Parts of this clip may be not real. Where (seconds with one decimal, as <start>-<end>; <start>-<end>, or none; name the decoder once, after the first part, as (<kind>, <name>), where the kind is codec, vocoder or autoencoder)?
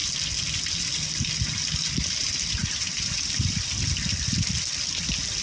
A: 2.6-4.3 (vocoder, BigVGAN v2)